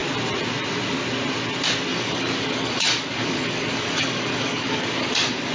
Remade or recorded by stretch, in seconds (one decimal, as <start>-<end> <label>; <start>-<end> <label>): 0.0-1.9 recorded; 1.9-5.5 remade